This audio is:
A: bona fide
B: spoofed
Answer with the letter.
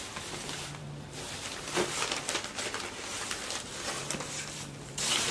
B